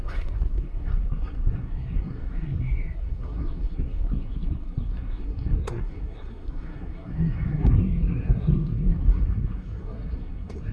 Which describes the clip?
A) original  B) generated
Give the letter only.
B